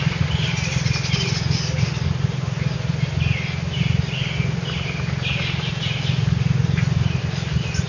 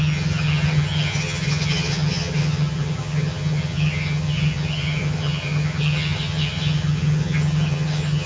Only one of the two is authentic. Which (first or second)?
first